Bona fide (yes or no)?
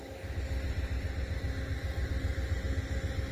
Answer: yes